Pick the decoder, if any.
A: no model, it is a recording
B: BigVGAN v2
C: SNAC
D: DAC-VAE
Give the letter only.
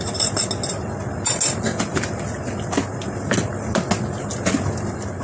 A